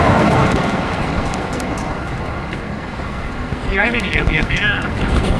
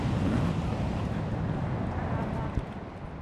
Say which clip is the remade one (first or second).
first